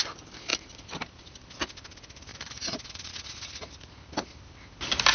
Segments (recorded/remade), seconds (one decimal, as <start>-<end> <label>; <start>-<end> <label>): 0.0-2.3 recorded; 2.3-3.7 remade; 3.7-5.1 recorded